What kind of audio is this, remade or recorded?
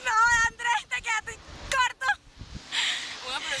recorded